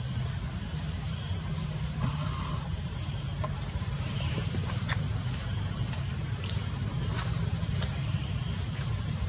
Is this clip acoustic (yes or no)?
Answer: no